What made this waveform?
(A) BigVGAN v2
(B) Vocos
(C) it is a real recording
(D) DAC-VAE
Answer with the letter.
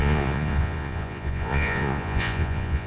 B